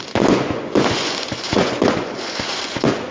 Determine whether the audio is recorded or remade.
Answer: remade